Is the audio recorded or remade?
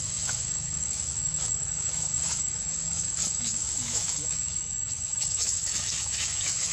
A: remade